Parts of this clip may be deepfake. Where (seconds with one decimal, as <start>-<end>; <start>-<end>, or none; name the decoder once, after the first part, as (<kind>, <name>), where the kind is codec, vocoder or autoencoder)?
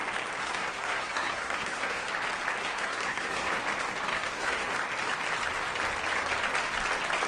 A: 0.4-2.1 (codec, SNAC); 2.6-3.6; 4.1-4.7